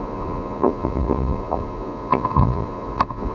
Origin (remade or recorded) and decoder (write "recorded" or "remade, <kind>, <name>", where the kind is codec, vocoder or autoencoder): remade, vocoder, Vocos